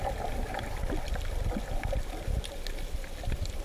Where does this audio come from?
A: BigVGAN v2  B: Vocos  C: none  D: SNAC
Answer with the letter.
C